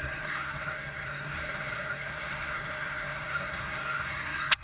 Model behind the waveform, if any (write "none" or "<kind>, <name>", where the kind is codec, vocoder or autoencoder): codec, SNAC